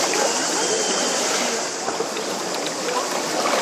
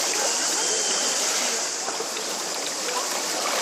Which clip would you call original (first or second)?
first